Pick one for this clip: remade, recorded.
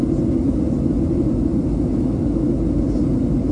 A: recorded